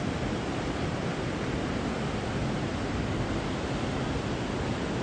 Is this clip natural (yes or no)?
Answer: yes